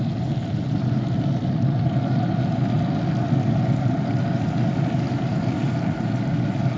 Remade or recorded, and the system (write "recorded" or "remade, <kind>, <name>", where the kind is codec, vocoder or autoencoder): recorded